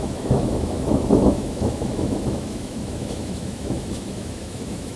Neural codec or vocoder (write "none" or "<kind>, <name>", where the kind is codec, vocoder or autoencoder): autoencoder, DAC-VAE